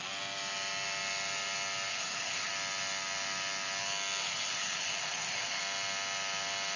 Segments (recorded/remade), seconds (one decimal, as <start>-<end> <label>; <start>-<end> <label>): 0.0-1.9 recorded; 1.9-2.5 remade; 2.5-4.2 recorded; 4.2-5.6 remade; 5.6-6.8 recorded

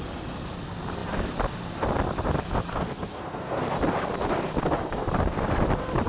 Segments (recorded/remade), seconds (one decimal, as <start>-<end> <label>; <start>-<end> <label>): 0.0-2.7 recorded; 2.7-3.6 remade; 3.6-6.1 recorded